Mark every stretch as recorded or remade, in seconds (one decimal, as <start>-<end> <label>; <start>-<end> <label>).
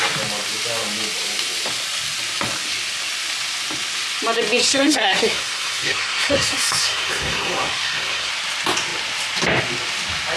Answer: 0.0-4.6 recorded; 4.6-8.3 remade; 8.3-10.4 recorded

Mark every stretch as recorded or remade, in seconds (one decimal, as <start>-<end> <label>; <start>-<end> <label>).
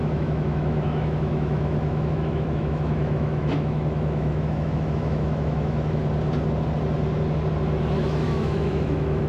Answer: 0.0-6.0 remade; 6.0-8.0 recorded; 8.0-9.3 remade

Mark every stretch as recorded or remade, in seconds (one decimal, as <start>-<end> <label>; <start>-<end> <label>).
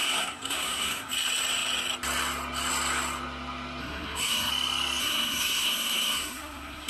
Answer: 0.0-1.1 remade; 1.1-3.8 recorded; 3.8-4.5 remade; 4.5-5.0 recorded; 5.0-6.9 remade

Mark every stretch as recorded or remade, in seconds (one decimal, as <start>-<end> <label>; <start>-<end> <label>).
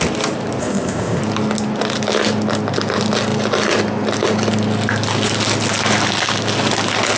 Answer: 0.0-0.6 recorded; 0.6-1.2 remade; 1.2-7.2 recorded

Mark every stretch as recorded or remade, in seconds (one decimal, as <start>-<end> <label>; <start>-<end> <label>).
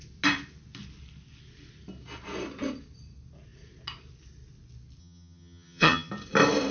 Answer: 0.0-5.0 recorded; 5.0-6.1 remade; 6.1-6.7 recorded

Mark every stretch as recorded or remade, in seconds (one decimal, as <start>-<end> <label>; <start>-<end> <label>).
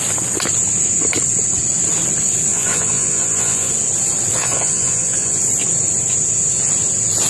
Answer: 0.0-2.5 recorded; 2.5-3.7 remade; 3.7-4.4 recorded; 4.4-5.4 remade; 5.4-7.3 recorded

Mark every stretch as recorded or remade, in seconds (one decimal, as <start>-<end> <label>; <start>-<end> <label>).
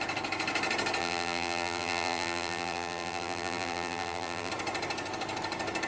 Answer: 0.0-1.0 recorded; 1.0-4.5 remade; 4.5-5.9 recorded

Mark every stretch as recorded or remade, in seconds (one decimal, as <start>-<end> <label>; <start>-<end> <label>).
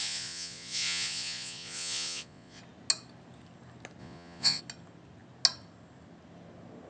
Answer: 0.0-2.6 remade; 2.6-4.0 recorded; 4.0-4.6 remade; 4.6-6.9 recorded